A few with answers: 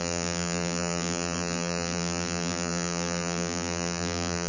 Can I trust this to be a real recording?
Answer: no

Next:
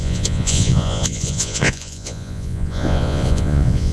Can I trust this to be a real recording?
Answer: no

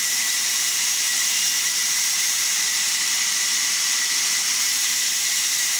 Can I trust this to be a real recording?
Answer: no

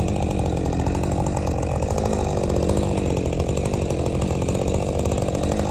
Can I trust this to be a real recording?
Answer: yes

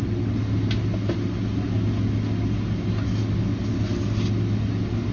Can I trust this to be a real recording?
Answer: yes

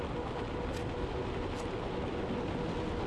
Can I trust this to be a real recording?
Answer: yes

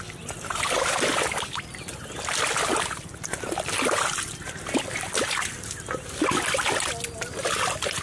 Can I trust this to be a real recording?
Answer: yes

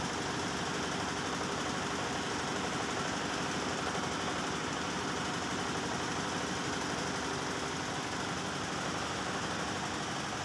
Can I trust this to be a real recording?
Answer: yes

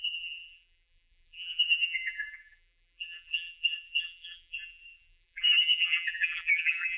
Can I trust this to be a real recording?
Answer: no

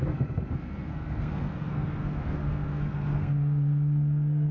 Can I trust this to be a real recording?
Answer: no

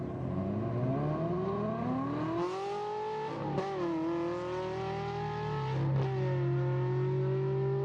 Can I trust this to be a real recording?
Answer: yes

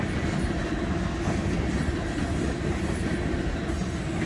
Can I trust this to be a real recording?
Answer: yes